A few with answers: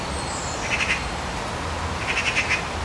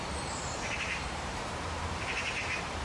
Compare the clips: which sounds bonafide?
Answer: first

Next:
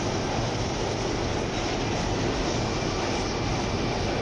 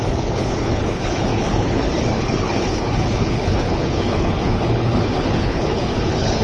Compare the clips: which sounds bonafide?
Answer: first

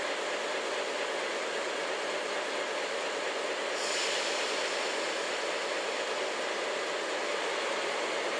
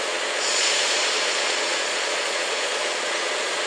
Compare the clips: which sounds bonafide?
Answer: first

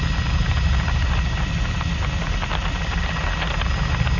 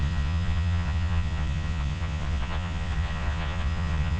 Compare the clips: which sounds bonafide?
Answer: first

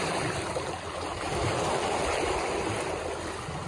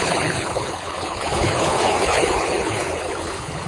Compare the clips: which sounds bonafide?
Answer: first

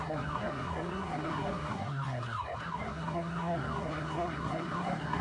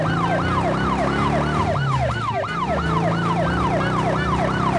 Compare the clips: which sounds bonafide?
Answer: second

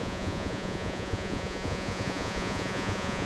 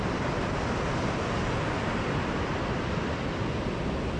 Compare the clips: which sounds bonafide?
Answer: second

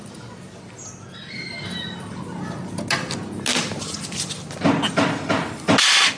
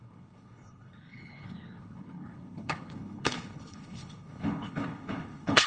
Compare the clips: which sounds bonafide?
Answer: first